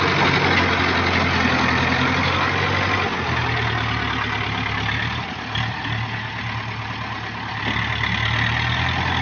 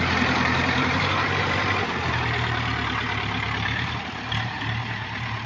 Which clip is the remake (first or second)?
second